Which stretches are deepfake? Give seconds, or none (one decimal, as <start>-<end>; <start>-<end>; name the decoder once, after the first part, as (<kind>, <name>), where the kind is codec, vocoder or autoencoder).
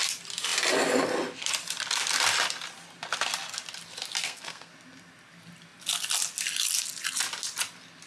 4.2-4.7 (codec, SNAC)